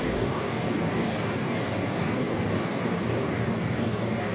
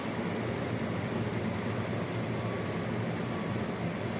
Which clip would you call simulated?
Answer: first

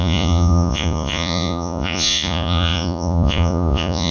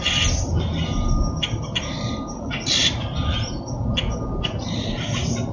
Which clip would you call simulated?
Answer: first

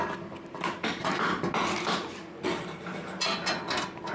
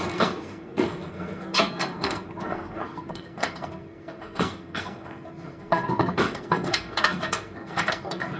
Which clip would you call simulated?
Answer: second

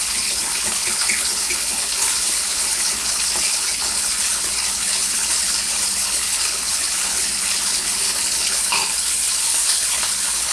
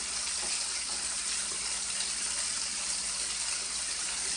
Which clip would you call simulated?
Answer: first